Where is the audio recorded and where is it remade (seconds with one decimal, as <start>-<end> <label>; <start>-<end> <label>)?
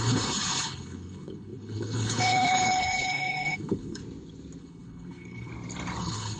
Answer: 0.0-4.0 remade; 4.0-4.6 recorded; 4.6-5.5 remade; 5.5-6.0 recorded; 6.0-6.4 remade